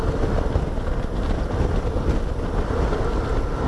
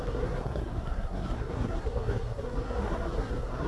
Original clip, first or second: first